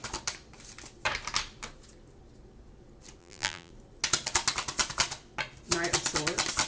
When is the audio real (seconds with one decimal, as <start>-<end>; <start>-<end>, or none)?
0.0-3.2; 3.7-6.7